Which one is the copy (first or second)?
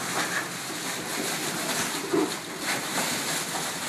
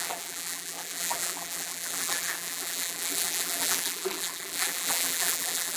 second